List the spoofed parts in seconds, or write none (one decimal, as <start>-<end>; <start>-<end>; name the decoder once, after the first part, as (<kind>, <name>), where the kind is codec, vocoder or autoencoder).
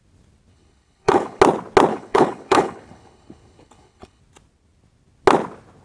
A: 0.5-1.4 (codec, HILCodec); 1.9-4.2